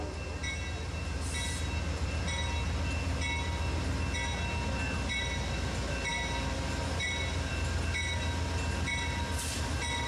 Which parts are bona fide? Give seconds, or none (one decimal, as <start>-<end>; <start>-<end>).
0.0-10.1